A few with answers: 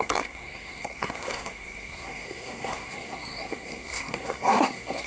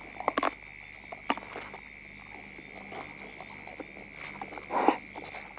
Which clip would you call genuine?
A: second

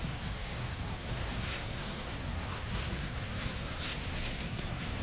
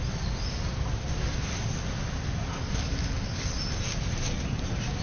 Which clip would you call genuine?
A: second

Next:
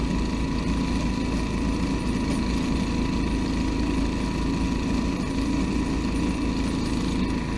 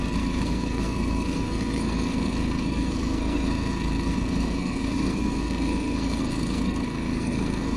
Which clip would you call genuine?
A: first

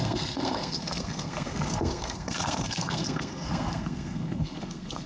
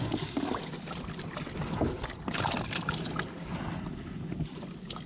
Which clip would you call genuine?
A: second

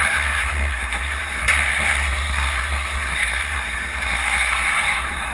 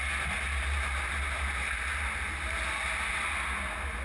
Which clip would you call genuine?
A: second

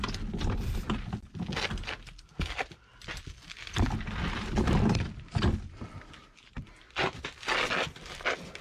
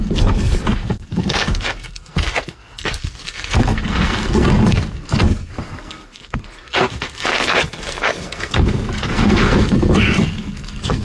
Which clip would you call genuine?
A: first